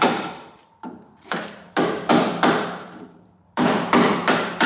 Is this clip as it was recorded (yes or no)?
no